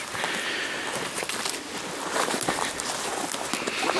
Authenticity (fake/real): real